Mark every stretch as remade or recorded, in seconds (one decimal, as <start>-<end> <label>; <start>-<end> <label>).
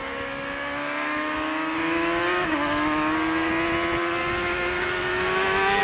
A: 0.0-3.5 remade; 3.5-4.2 recorded; 4.2-5.8 remade